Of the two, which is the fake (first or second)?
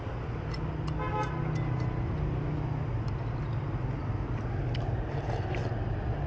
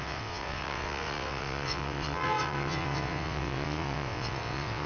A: second